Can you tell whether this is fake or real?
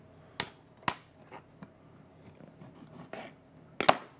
real